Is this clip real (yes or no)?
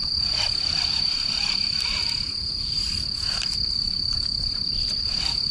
no